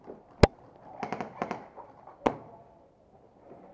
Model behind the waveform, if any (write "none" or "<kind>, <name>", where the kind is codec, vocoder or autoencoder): none